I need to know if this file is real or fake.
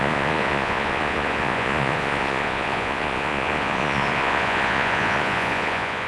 fake